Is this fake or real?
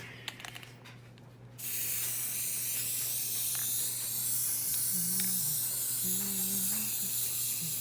real